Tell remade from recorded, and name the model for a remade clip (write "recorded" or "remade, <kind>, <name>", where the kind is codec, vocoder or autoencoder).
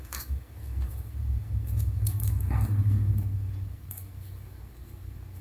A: remade, codec, SNAC